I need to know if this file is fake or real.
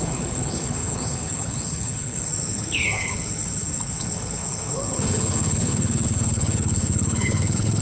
fake